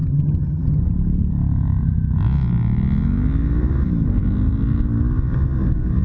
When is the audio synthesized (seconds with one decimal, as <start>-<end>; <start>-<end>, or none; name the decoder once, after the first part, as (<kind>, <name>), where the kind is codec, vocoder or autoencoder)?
0.0-0.8 (vocoder, HiFi-GAN)